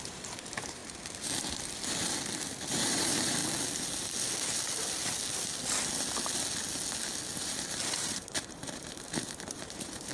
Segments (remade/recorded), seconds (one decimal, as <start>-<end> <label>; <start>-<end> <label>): 0.0-0.8 remade; 0.8-2.7 recorded; 2.7-3.4 remade; 3.4-7.4 recorded; 7.4-10.1 remade